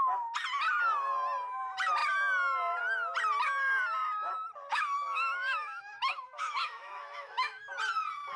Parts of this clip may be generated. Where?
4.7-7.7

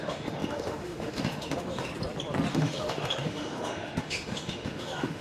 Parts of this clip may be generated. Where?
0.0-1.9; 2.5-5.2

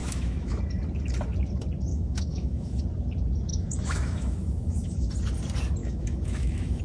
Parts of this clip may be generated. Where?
0.0-0.6; 1.9-2.8; 3.5-5.1; 5.8-6.8

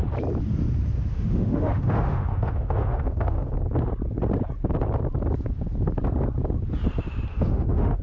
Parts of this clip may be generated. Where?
1.1-3.5; 7.3-8.0

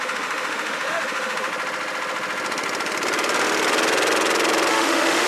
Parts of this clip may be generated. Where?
0.0-1.5; 4.7-5.3